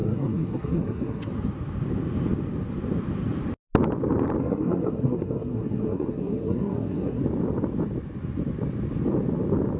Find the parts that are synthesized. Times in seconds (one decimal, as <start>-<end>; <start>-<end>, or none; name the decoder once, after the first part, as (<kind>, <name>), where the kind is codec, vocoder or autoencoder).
0.0-1.3 (codec, SNAC); 4.4-7.2